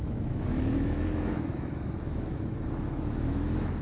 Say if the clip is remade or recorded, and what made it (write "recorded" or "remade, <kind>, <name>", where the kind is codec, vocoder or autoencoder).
remade, autoencoder, DAC-VAE